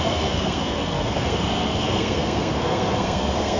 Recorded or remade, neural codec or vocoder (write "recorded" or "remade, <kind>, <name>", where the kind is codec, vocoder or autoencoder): remade, codec, SNAC